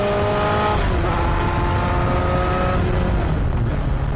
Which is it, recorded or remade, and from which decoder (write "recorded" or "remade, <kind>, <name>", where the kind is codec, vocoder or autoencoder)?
recorded